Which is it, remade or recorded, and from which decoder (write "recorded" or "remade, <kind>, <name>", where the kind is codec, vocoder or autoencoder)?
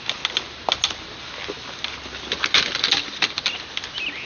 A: recorded